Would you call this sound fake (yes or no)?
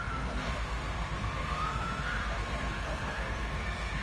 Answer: yes